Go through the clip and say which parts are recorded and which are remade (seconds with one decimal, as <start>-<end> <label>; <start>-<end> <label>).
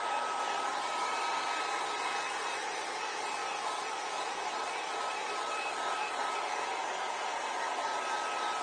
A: 0.0-8.6 recorded